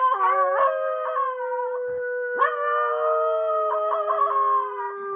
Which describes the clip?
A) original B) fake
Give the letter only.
A